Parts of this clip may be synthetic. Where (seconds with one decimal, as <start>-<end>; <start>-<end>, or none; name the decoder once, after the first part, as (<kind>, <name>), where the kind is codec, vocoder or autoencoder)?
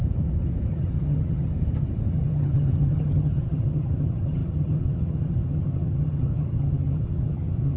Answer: 0.7-1.5 (vocoder, HiFi-GAN); 2.1-7.8